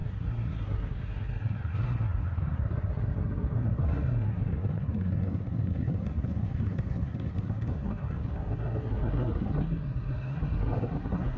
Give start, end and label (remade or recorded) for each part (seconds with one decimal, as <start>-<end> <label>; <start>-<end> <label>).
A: 0.0-11.4 remade